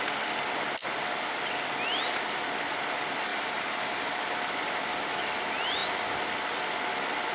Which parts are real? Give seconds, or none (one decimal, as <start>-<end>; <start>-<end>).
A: 0.0-3.3; 4.2-7.3